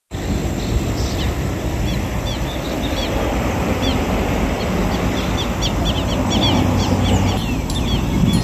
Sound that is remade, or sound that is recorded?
recorded